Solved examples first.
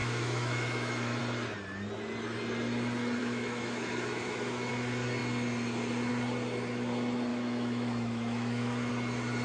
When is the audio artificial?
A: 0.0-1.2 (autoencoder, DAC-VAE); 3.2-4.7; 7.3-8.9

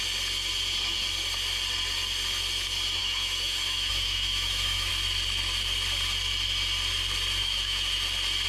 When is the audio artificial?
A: 3.0-4.9 (autoencoder, DAC-VAE); 7.4-8.0

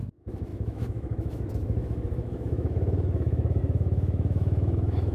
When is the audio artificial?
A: 0.0-5.1 (autoencoder, DAC-VAE)